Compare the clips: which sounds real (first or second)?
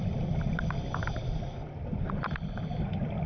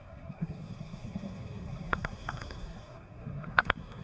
first